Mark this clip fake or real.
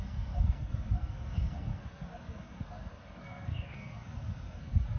fake